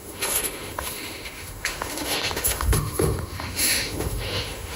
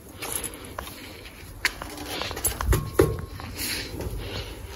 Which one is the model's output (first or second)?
first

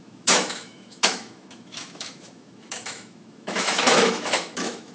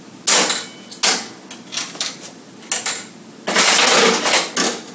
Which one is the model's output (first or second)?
first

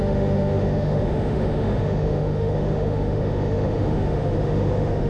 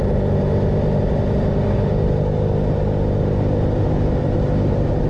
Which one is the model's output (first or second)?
first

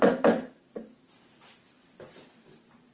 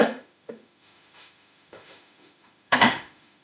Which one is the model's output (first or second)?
second